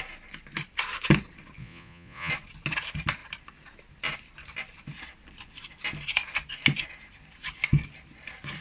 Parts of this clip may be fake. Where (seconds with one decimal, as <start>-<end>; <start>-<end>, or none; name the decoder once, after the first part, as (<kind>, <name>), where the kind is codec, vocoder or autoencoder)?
1.6-2.3 (vocoder, Vocos)